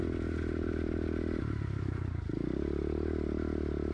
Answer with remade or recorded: recorded